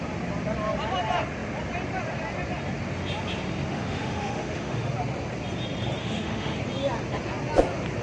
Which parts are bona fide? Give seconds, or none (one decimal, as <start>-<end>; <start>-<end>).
0.0-3.7; 4.9-6.0; 6.6-8.0